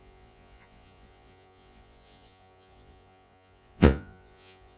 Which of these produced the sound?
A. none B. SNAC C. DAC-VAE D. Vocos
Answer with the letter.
D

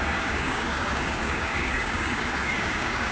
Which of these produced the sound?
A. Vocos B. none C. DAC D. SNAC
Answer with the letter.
C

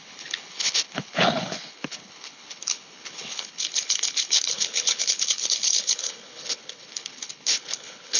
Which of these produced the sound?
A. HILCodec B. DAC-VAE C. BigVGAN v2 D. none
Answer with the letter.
A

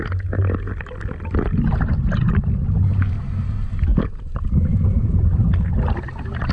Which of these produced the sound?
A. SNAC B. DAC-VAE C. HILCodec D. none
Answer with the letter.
D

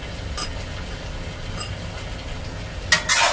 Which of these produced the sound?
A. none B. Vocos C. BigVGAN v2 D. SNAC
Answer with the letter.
A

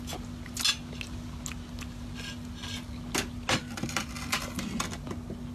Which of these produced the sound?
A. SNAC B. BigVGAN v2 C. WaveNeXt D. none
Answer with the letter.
D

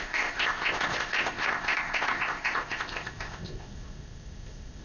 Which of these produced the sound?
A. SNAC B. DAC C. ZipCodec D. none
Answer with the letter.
C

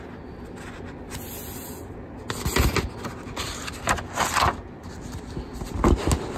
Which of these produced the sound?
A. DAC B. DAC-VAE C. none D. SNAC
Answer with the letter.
C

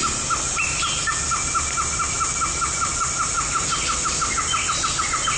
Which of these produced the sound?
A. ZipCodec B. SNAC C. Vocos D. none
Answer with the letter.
D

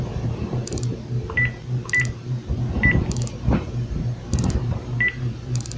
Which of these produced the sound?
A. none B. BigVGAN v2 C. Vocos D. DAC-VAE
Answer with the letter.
B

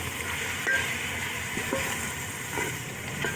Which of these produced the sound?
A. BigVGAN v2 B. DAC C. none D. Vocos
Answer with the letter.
A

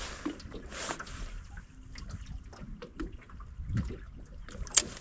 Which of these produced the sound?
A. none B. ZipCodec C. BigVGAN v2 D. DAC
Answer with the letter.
A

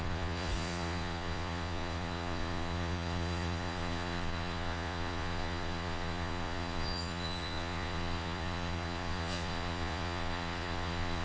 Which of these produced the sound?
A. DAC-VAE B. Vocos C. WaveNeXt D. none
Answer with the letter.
B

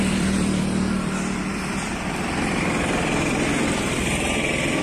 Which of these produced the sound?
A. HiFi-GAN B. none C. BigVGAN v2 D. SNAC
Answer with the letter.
C